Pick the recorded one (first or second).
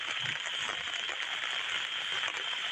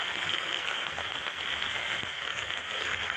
first